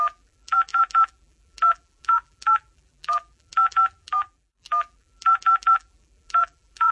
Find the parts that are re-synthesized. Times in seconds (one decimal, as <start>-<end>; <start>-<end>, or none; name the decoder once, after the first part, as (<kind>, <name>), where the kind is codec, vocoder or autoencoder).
0.0-6.9 (vocoder, BigVGAN v2)